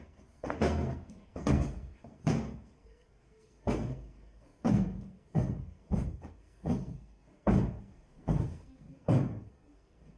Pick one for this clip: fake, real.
fake